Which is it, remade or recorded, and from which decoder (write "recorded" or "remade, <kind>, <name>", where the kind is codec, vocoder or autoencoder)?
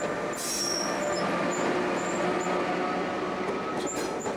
recorded